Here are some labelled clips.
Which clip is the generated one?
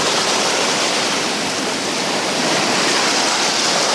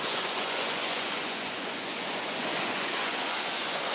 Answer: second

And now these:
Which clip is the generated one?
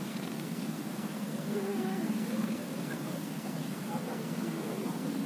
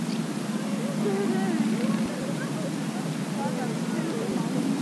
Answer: first